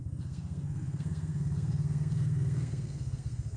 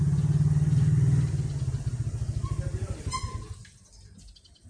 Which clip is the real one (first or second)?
second